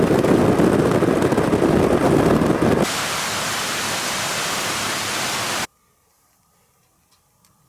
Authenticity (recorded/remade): recorded